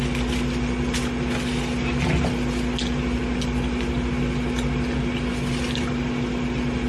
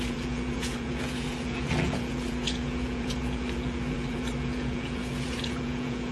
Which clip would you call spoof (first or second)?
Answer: second